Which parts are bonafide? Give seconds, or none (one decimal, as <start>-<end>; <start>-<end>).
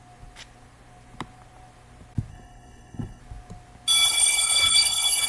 0.0-2.3; 3.2-4.0